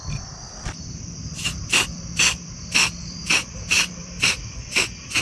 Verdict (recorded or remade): remade